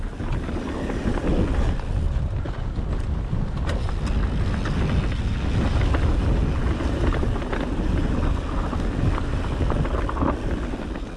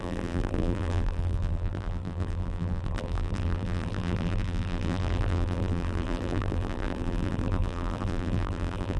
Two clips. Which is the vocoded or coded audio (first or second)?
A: second